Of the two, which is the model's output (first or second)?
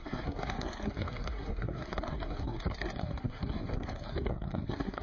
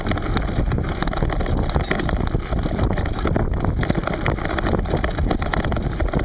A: first